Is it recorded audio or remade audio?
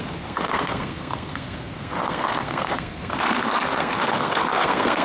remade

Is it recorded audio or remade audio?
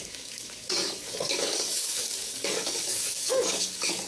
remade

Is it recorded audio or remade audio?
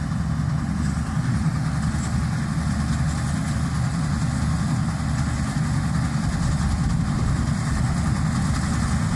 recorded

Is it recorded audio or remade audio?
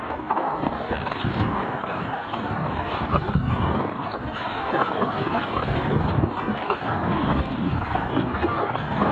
remade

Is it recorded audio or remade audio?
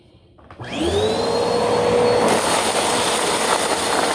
recorded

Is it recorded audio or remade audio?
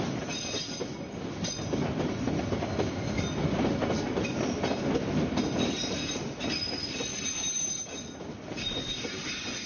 recorded